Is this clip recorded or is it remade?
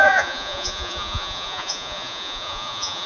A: remade